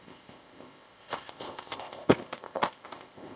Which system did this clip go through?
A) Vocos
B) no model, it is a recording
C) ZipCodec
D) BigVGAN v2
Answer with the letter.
C